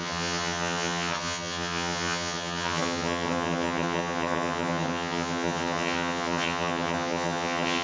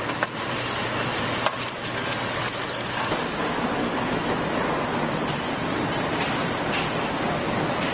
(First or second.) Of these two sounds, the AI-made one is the first